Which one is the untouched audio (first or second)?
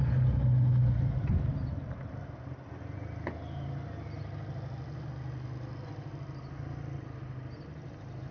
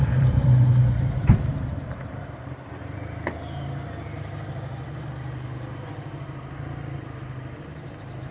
first